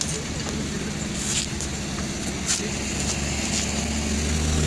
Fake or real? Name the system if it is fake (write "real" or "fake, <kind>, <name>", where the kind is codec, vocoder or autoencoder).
real